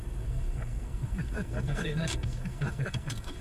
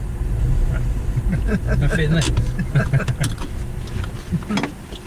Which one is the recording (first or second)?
second